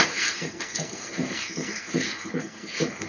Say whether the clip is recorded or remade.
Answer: remade